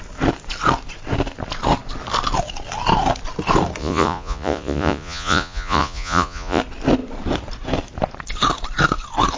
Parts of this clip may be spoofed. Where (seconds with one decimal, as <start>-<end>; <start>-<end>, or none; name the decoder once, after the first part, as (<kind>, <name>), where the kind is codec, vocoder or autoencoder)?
3.8-6.6 (vocoder, Vocos)